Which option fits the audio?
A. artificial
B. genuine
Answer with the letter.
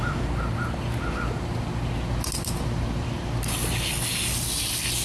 B